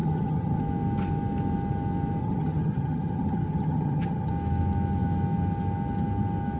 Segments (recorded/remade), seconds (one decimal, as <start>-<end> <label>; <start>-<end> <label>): 0.0-0.6 remade; 0.6-2.2 recorded; 2.2-4.3 remade; 4.3-6.6 recorded